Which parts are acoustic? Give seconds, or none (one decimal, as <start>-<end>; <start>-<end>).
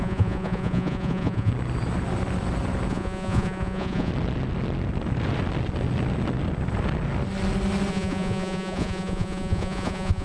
1.5-2.9; 4.1-7.9